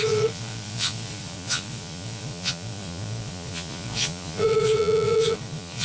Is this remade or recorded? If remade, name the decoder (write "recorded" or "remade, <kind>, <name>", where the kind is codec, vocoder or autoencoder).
remade, vocoder, Vocos